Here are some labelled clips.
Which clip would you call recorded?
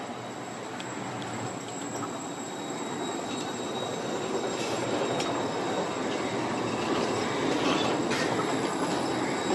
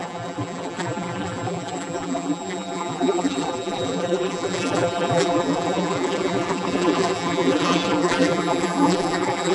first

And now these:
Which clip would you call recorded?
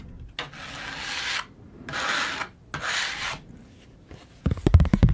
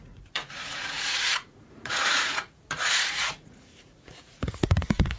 first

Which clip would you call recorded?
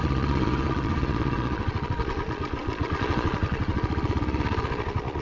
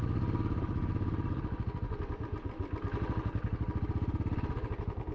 second